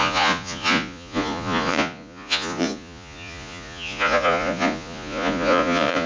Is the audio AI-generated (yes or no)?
yes